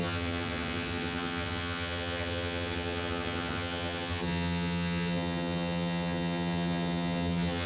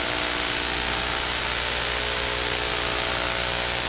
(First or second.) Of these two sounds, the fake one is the first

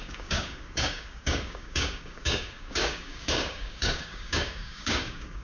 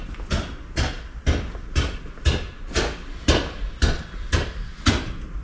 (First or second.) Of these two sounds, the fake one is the first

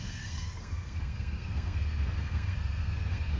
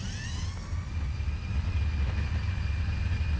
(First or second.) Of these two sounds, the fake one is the first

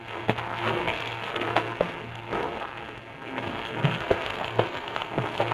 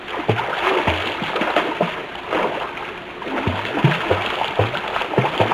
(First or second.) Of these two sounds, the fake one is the first